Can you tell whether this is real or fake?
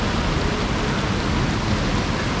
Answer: real